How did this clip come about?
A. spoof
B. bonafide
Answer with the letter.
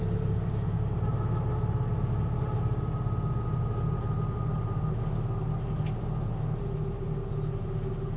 B